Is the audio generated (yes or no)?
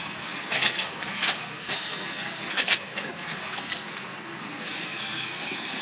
yes